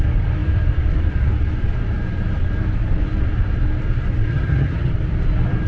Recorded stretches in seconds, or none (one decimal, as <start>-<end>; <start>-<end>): 0.0-4.3; 4.9-5.7